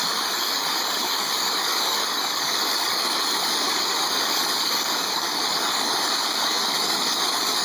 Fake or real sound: fake